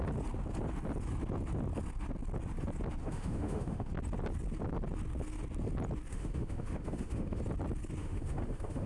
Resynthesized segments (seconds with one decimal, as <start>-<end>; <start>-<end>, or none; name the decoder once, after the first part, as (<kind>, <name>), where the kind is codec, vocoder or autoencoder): 3.0-3.9 (autoencoder, DAC-VAE); 6.1-7.4; 8.0-8.9